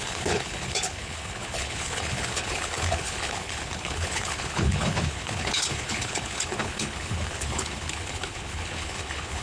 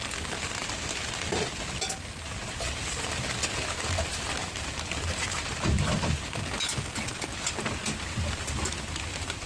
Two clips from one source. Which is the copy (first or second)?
first